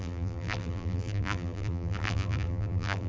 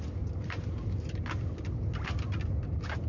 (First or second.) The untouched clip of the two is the second